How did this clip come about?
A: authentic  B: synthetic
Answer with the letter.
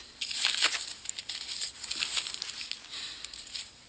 B